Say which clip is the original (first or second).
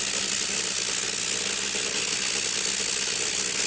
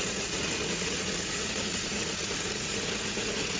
first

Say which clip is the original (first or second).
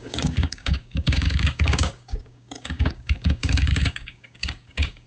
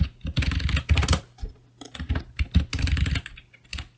second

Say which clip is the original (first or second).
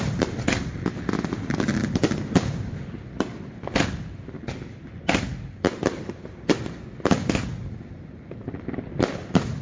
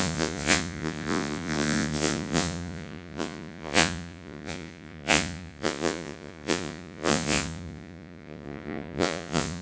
first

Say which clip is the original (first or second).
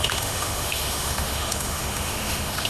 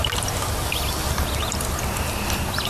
second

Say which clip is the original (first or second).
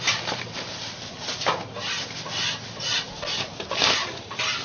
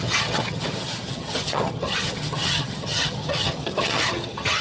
first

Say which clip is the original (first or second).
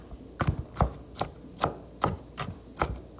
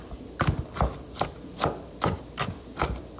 first